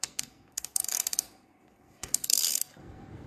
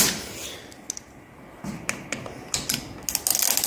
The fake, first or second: first